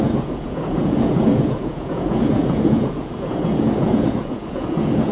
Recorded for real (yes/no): no